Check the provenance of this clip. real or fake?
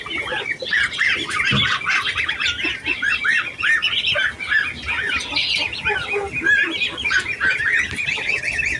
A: real